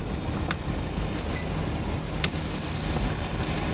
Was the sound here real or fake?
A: real